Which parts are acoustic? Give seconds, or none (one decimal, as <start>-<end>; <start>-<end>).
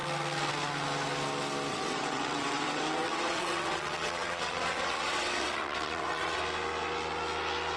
0.0-1.7; 6.4-7.8